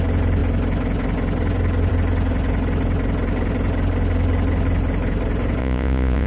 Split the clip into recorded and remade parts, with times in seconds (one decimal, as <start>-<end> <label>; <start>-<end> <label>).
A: 0.0-5.6 recorded; 5.6-6.3 remade